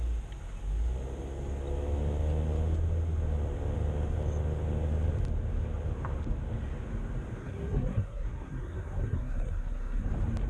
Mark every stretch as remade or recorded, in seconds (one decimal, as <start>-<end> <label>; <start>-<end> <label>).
0.0-7.4 recorded; 7.4-10.1 remade; 10.1-10.5 recorded